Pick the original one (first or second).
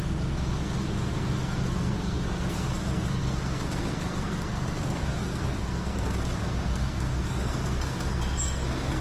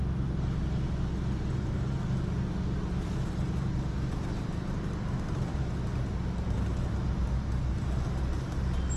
second